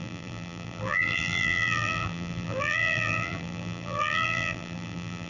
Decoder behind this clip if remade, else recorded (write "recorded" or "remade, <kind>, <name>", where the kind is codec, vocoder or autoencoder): remade, vocoder, BigVGAN v2